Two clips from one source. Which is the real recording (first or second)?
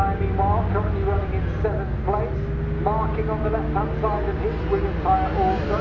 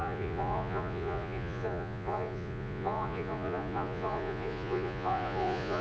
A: first